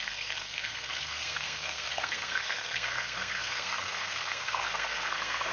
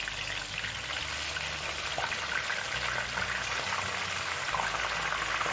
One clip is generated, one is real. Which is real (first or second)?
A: second